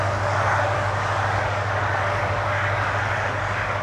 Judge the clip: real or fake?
fake